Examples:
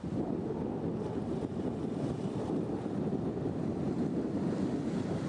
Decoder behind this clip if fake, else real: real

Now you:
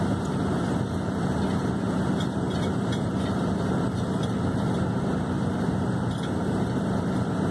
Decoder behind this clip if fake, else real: real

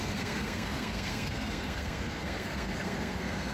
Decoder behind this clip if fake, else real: fake, codec, SNAC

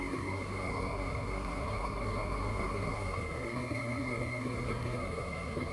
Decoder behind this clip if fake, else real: fake, codec, SNAC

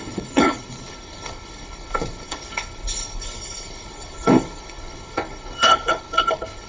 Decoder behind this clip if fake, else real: fake, codec, HILCodec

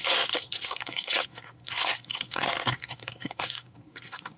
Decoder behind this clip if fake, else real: fake, codec, SNAC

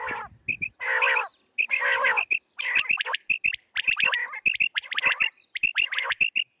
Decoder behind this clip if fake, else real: real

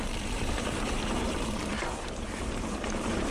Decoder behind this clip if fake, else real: fake, vocoder, BigVGAN v2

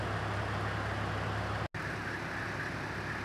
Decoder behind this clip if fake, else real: real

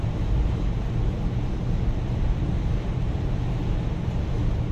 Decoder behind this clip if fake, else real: fake, vocoder, BigVGAN v2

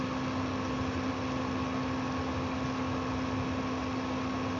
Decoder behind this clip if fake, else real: real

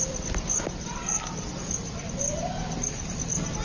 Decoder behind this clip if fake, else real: fake, vocoder, BigVGAN v2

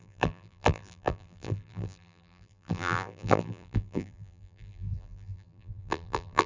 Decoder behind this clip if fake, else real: fake, vocoder, BigVGAN v2